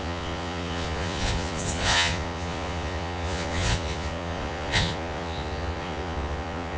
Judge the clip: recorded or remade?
remade